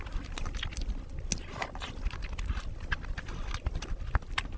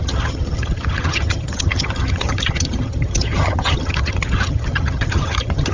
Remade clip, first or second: second